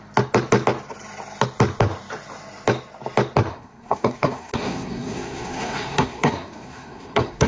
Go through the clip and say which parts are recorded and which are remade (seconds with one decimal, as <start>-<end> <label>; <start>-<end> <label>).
0.0-3.5 recorded; 3.5-7.5 remade